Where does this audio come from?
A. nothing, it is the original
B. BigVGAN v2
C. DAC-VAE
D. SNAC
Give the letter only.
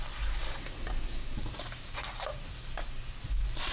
A